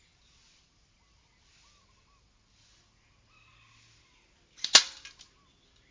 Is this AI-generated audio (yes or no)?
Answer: no